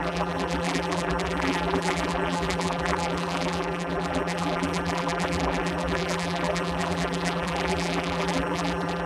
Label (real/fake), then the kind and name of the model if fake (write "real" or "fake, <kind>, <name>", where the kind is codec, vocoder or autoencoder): fake, vocoder, BigVGAN v2